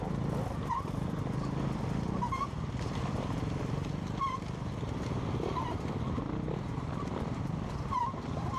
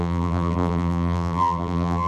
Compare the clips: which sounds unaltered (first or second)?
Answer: first